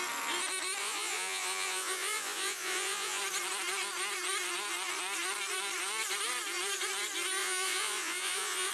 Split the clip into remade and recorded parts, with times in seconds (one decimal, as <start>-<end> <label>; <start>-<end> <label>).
0.0-0.8 recorded; 0.8-3.2 remade; 3.2-7.4 recorded; 7.4-8.7 remade